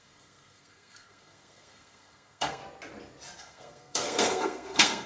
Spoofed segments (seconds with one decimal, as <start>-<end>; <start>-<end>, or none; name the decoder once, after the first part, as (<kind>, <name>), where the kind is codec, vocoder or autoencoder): 0.0-2.6 (codec, SNAC); 3.4-5.1